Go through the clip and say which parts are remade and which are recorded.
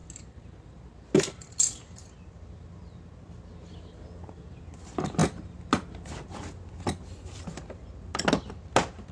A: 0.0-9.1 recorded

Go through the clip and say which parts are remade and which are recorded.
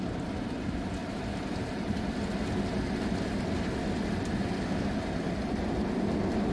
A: 0.0-6.5 recorded